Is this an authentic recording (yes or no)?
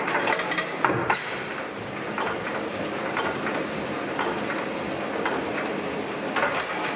yes